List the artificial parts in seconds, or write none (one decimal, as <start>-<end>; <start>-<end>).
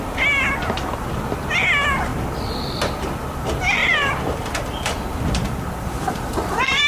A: 2.1-2.8; 3.8-6.1